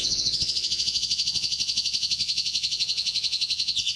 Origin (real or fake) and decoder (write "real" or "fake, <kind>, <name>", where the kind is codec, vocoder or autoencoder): fake, vocoder, Vocos